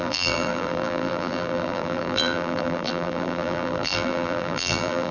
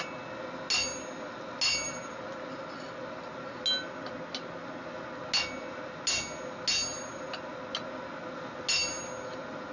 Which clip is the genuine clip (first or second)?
second